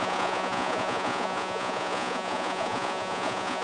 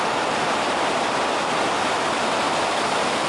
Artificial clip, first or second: first